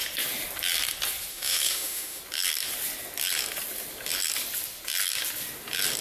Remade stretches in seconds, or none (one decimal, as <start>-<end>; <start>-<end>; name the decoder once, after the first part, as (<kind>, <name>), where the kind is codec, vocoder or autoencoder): 1.3-2.2 (autoencoder, DAC-VAE)